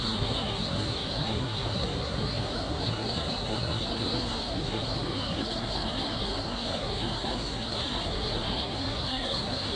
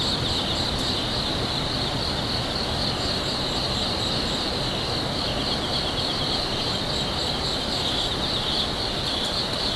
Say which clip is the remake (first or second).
first